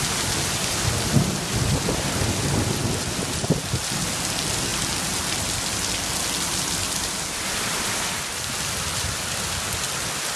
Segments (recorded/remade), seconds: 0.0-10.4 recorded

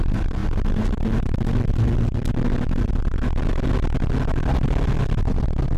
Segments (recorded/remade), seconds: 0.0-5.8 recorded